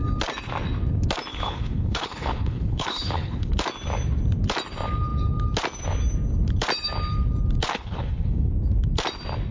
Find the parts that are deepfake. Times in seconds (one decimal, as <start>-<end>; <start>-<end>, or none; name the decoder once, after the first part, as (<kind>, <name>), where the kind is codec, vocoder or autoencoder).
1.3-3.5 (codec, HILCodec); 7.7-8.5